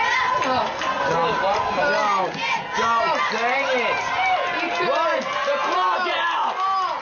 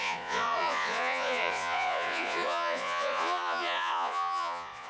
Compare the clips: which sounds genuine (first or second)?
first